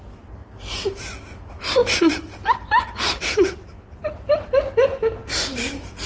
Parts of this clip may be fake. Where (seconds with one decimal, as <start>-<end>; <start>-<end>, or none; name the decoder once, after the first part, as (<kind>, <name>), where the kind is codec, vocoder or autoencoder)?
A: 1.8-4.5 (vocoder, BigVGAN v2); 5.2-6.1